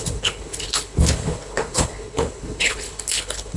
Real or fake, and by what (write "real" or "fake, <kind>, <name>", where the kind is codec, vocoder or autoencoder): fake, codec, HILCodec